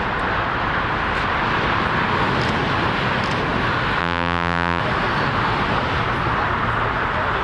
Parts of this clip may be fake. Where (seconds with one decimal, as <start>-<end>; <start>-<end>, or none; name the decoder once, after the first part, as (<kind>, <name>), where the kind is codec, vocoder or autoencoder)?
4.0-4.8 (vocoder, BigVGAN v2)